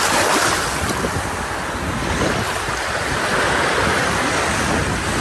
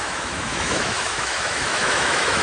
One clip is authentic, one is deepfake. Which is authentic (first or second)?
first